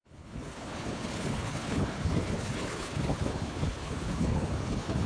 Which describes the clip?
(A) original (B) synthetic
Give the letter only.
B